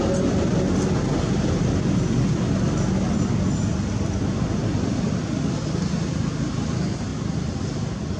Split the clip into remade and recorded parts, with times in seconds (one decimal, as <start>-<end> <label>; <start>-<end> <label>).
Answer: 0.0-8.2 recorded